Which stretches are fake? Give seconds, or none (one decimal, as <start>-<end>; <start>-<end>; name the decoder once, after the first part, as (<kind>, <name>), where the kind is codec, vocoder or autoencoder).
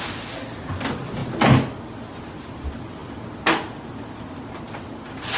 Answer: none